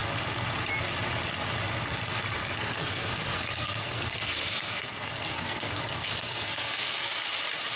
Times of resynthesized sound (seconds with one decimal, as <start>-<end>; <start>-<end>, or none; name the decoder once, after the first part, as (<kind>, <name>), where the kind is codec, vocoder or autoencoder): 2.4-7.1 (codec, SNAC)